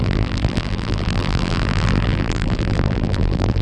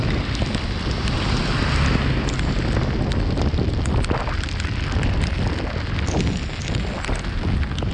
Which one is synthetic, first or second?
first